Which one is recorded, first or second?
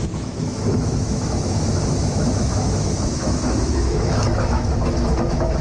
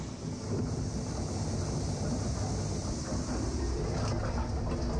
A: second